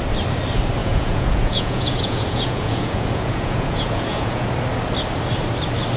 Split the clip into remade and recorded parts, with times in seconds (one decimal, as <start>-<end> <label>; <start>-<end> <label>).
0.0-0.8 recorded; 0.8-4.4 remade; 4.4-6.0 recorded